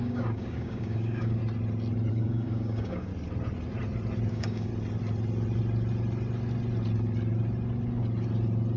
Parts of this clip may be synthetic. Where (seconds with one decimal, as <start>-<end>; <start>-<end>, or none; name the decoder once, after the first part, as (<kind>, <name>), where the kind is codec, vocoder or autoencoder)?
0.0-1.4 (codec, DAC); 2.1-3.1; 4.3-4.7

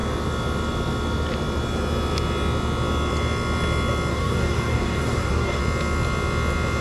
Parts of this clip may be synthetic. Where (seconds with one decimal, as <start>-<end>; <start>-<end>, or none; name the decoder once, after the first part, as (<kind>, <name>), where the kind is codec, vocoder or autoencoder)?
4.1-5.6 (codec, DAC)

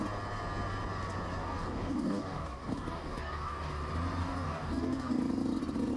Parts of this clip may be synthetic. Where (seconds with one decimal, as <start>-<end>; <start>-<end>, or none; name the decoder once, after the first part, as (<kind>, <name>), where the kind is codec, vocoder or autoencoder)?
1.4-3.7 (codec, DAC); 4.2-5.2

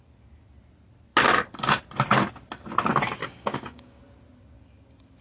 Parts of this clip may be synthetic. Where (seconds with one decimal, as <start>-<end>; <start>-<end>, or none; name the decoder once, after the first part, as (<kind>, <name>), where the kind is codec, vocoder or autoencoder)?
3.2-4.0 (codec, DAC)

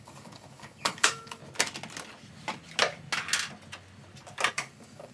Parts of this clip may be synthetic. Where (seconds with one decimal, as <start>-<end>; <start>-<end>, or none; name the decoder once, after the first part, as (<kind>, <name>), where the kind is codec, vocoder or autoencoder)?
0.0-1.4 (codec, DAC); 4.5-5.1

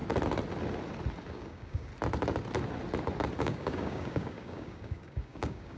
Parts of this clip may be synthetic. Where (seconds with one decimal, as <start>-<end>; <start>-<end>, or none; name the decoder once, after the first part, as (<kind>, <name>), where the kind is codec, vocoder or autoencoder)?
1.3-1.9 (codec, DAC); 3.4-5.8

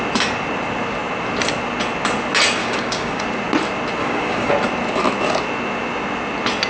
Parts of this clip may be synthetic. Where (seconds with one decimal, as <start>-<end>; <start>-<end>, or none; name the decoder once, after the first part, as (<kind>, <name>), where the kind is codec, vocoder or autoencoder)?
2.6-3.2 (codec, DAC); 4.0-4.5

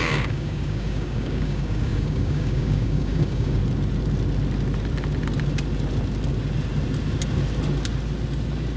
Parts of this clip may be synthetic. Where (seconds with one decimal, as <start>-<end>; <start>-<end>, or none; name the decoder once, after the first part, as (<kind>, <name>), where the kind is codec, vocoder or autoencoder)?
0.0-3.6 (codec, DAC)